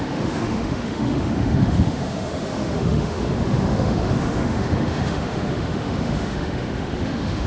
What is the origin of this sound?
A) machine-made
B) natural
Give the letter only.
A